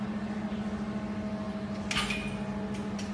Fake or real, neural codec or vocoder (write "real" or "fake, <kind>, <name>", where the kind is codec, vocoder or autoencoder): real